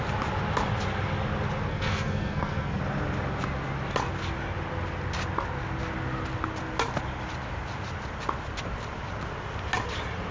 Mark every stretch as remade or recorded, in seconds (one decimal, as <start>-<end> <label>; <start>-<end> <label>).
0.0-1.7 recorded; 1.7-2.8 remade; 2.8-10.3 recorded